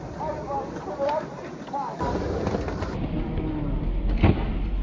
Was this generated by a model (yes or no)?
no